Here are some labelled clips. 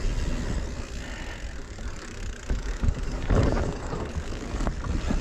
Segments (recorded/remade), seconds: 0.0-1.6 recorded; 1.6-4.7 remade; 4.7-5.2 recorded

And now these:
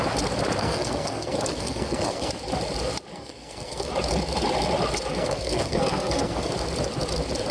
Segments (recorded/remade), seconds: 0.0-0.6 recorded; 0.6-2.3 remade; 2.3-3.1 recorded; 3.1-3.9 remade; 3.9-5.1 recorded; 5.1-6.5 remade; 6.5-7.5 recorded

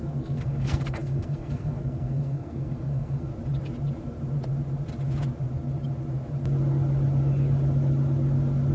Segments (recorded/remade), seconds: 0.0-3.3 remade; 3.3-8.7 recorded

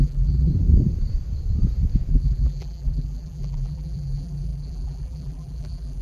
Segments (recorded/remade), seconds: 0.0-0.5 remade; 0.5-2.1 recorded; 2.1-6.0 remade